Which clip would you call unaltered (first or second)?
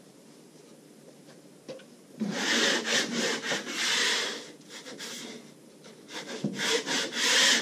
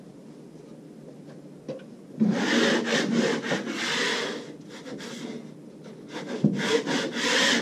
second